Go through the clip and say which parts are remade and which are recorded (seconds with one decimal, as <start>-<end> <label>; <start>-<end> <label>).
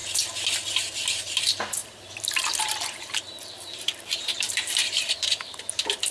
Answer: 0.0-0.7 recorded; 0.7-6.1 remade